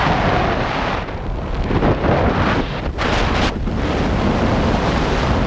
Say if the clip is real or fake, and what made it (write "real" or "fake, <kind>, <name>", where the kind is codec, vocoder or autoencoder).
real